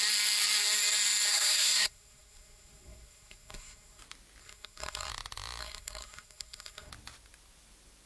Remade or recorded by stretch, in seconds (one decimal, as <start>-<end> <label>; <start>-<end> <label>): 0.0-1.3 recorded; 1.3-4.0 remade; 4.0-4.4 recorded; 4.4-5.1 remade; 5.1-5.6 recorded; 5.6-6.9 remade; 6.9-8.1 recorded